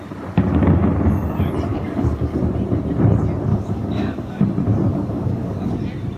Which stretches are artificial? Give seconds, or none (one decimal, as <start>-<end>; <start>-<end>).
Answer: 1.7-2.4; 3.5-4.4; 4.9-5.7